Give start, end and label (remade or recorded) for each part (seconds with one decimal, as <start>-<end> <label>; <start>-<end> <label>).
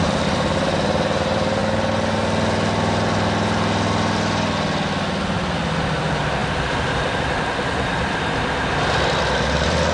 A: 0.0-1.6 remade; 1.6-5.7 recorded; 5.7-9.9 remade